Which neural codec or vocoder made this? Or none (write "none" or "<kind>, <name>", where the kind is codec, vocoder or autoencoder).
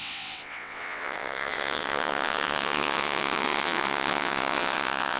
vocoder, WaveNeXt